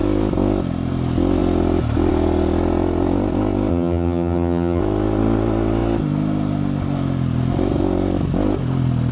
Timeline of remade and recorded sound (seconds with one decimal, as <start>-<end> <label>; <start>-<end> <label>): 0.0-3.7 recorded; 3.7-4.8 remade; 4.8-9.1 recorded